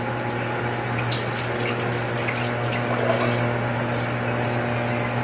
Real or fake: real